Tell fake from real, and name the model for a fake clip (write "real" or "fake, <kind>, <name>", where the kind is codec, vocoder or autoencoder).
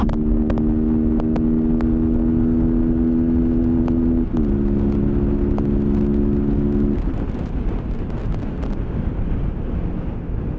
real